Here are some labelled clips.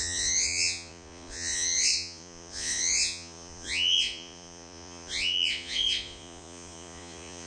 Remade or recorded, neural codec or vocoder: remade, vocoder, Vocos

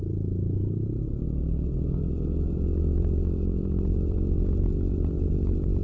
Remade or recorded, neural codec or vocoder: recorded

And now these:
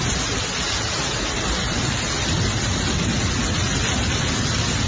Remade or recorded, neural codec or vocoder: recorded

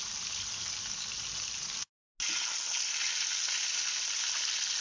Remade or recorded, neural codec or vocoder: recorded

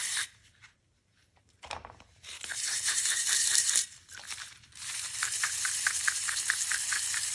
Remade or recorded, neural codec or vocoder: remade, vocoder, BigVGAN v2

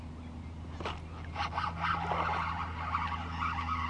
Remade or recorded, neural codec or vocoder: recorded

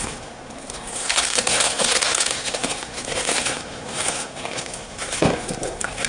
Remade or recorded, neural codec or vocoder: remade, codec, SNAC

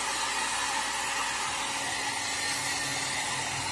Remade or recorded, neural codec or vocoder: recorded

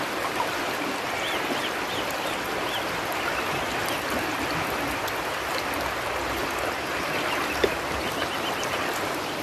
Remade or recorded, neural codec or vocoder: recorded